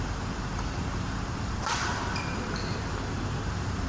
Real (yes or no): yes